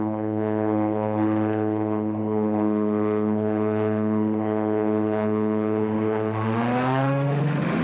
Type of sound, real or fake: fake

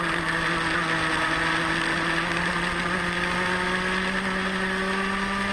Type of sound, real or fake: real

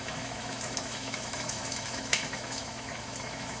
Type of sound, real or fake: fake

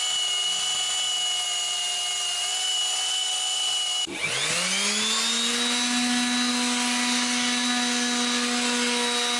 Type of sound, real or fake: real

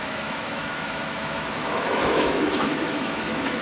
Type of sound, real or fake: fake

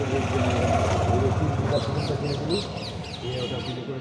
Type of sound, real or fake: real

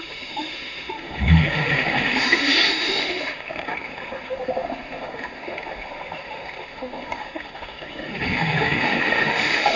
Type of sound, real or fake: fake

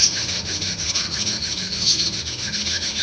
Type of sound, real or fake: fake